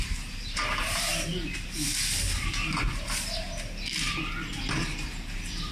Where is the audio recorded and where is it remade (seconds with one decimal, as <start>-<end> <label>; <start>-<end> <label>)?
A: 0.0-5.7 remade

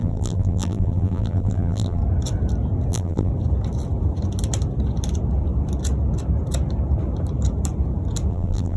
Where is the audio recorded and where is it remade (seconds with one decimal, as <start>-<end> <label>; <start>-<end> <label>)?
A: 0.0-2.0 remade; 2.0-2.9 recorded; 2.9-3.3 remade; 3.3-8.3 recorded; 8.3-8.8 remade

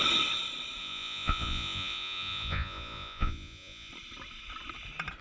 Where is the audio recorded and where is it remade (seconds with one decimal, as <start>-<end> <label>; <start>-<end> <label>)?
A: 0.0-0.8 recorded; 0.8-3.9 remade; 3.9-5.2 recorded